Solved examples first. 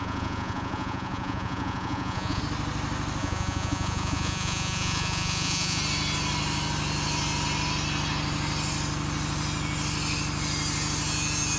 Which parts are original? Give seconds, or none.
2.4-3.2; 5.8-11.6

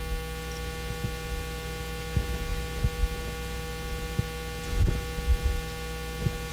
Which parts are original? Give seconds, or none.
0.0-6.5